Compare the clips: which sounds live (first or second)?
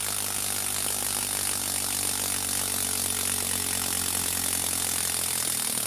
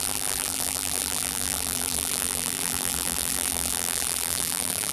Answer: first